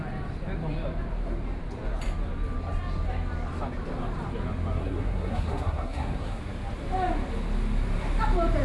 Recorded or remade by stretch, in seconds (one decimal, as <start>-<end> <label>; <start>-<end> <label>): 0.0-4.8 recorded; 4.8-6.4 remade; 6.4-8.6 recorded